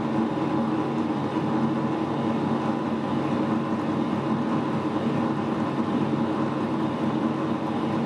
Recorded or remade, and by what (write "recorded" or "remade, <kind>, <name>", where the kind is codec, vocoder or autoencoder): recorded